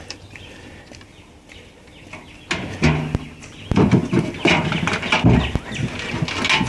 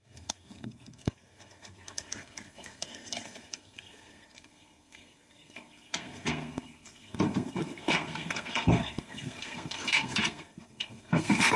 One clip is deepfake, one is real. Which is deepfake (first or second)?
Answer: second